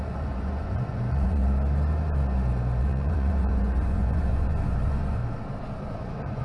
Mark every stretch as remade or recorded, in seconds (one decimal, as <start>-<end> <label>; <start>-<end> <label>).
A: 0.0-1.4 remade; 1.4-2.8 recorded; 2.8-5.2 remade; 5.2-5.9 recorded; 5.9-6.4 remade